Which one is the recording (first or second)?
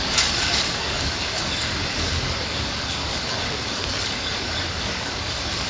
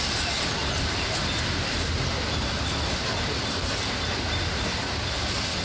second